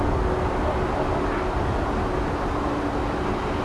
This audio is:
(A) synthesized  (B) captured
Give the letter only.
B